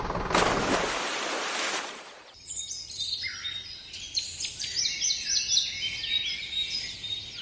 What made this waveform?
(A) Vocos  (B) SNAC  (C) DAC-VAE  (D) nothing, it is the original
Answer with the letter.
D